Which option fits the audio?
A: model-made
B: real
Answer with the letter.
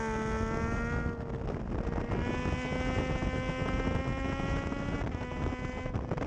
B